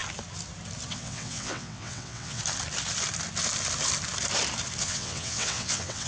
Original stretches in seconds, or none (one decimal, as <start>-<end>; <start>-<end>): 0.0-0.9; 2.4-4.8

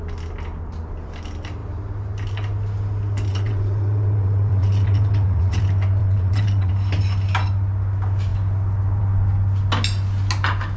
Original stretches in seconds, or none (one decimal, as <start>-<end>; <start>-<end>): 0.0-3.3; 5.6-6.0; 6.7-10.8

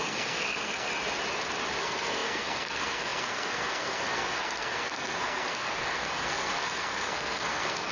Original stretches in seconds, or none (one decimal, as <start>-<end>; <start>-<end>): 0.9-1.8

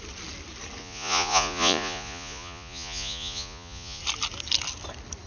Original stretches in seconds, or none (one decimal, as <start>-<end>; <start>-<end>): 0.0-0.8; 4.0-5.3